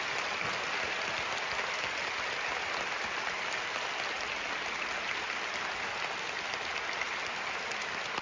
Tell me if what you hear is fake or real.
real